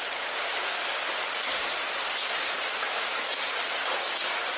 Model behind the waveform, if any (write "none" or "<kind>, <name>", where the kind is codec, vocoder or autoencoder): none